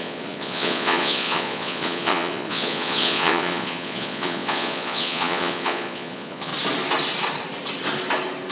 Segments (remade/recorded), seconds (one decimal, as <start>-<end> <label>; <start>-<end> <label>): 0.0-6.5 remade; 6.5-8.5 recorded